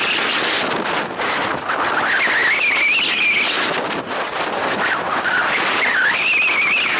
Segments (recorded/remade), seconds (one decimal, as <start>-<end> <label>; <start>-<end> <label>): 0.0-7.0 recorded